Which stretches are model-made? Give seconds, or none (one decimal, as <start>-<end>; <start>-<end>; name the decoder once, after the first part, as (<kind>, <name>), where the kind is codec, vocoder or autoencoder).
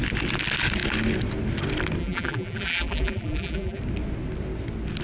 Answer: 2.0-3.8 (vocoder, BigVGAN v2)